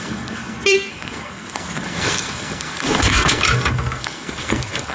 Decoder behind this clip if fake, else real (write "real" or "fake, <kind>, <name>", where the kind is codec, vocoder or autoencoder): fake, codec, SNAC